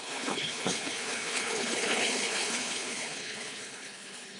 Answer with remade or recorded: remade